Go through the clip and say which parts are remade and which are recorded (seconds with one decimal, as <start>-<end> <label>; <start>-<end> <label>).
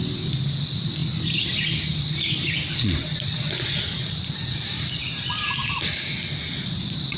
0.0-7.2 recorded